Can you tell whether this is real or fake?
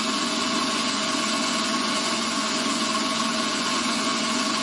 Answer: fake